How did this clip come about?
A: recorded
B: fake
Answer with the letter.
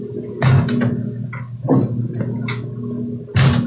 A